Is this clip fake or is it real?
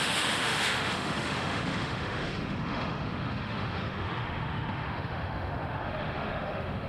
fake